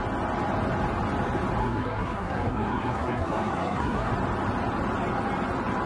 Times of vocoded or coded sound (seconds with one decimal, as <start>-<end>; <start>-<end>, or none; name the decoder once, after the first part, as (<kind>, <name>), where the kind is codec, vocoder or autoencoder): 1.6-4.1 (codec, SNAC)